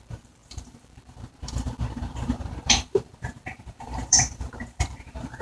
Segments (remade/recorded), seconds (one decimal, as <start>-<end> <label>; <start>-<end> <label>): 0.0-5.4 remade